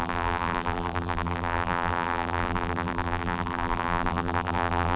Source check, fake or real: fake